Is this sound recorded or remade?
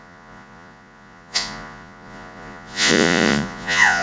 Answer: remade